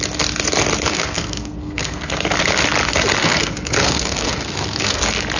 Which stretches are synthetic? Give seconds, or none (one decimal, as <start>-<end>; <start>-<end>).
0.9-2.1; 3.2-5.0